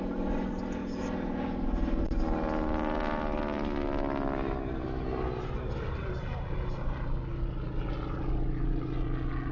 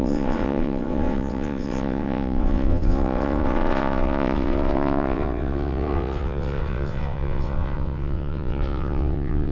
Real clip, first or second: first